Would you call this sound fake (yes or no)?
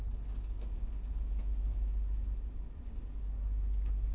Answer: no